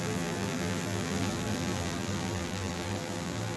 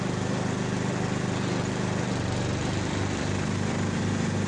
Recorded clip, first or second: second